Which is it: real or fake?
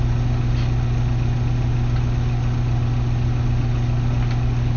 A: real